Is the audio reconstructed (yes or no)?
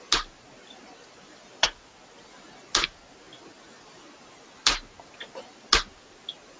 no